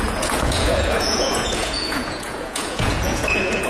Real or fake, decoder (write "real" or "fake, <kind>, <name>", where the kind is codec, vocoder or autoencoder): fake, vocoder, Vocos